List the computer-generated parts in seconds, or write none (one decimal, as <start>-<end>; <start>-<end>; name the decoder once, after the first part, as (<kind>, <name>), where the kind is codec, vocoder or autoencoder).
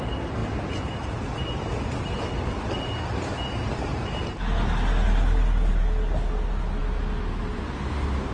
none